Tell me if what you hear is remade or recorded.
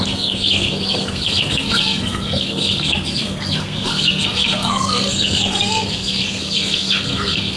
remade